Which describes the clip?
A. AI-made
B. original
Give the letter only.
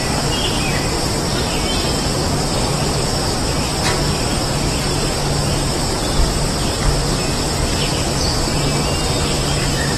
B